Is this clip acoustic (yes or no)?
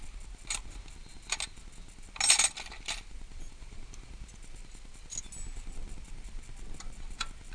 yes